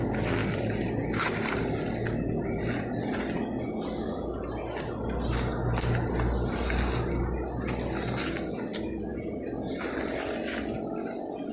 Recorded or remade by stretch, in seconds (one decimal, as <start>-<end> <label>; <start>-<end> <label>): 0.0-11.5 recorded